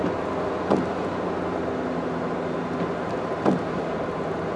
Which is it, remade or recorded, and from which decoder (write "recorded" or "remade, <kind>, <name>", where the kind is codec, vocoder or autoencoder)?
recorded